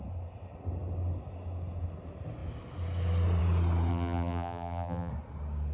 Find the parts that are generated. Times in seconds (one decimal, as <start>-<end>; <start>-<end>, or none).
3.9-5.1